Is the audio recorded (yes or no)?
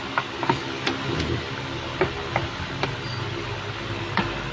yes